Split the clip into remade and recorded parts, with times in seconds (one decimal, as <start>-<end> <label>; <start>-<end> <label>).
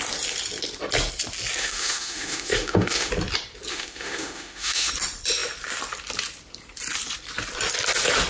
0.0-1.6 recorded; 1.6-3.1 remade; 3.1-3.7 recorded; 3.7-4.9 remade; 4.9-8.3 recorded